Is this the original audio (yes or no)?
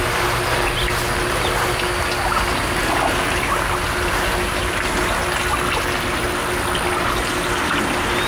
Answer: yes